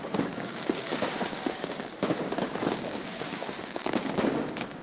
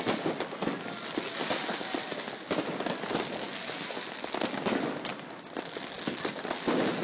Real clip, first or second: second